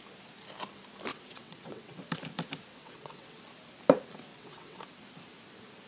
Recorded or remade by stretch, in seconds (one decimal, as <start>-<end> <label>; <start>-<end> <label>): 0.0-1.1 recorded; 1.1-2.0 remade; 2.0-2.7 recorded; 2.7-3.4 remade; 3.4-4.3 recorded; 4.3-4.8 remade; 4.8-5.9 recorded